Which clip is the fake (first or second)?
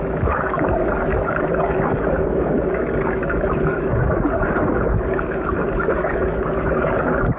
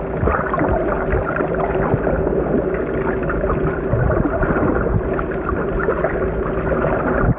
first